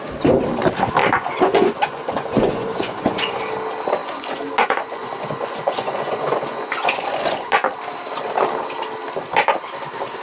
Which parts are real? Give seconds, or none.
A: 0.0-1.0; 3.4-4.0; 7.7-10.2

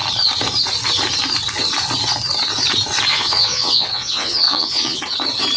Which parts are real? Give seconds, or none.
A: 0.0-3.1; 5.0-5.6

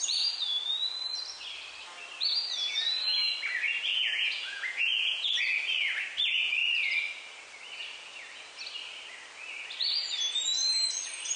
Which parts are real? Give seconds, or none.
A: 0.0-3.9; 5.4-11.4

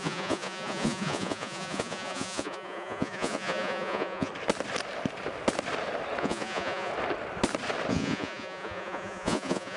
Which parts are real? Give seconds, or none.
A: 4.3-6.2; 6.9-7.9